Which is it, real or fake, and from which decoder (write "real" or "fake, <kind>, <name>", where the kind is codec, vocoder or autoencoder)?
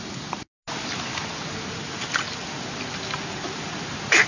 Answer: real